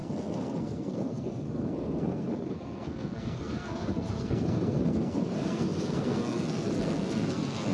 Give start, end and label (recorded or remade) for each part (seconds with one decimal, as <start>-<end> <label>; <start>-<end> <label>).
0.0-7.7 remade